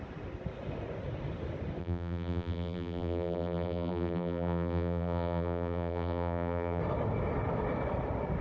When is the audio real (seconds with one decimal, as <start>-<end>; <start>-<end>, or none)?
0.0-1.8; 6.8-8.4